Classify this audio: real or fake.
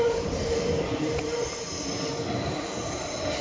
real